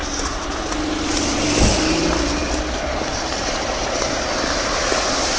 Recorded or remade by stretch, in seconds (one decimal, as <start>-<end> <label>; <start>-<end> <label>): 0.0-5.4 recorded